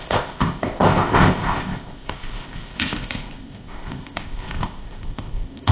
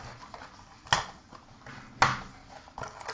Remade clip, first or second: first